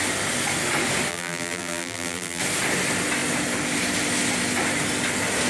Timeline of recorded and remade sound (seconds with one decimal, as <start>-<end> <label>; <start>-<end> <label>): 0.0-1.1 recorded; 1.1-2.4 remade; 2.4-5.5 recorded